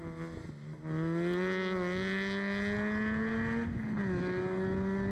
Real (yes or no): yes